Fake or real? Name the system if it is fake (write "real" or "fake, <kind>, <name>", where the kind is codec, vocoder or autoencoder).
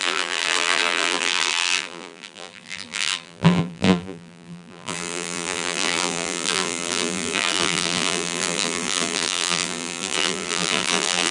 fake, vocoder, BigVGAN v2